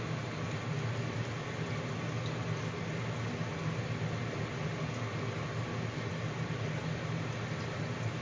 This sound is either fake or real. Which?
real